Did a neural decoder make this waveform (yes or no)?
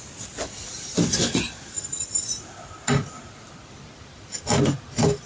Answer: no